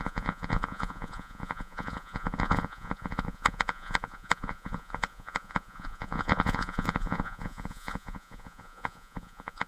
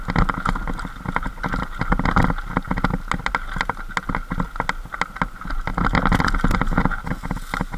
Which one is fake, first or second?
first